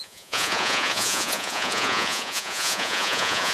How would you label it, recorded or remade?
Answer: remade